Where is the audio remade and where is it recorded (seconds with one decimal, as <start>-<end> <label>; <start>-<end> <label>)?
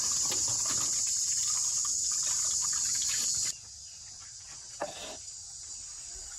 0.0-6.4 recorded